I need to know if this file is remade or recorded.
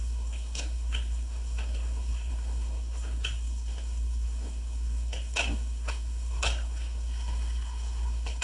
remade